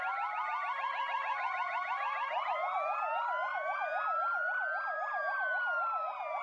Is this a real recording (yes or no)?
yes